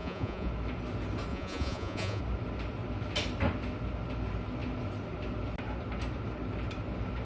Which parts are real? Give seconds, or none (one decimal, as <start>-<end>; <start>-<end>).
0.5-1.3; 2.2-7.2